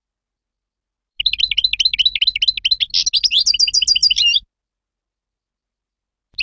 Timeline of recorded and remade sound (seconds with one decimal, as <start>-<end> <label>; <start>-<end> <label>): 0.0-6.4 recorded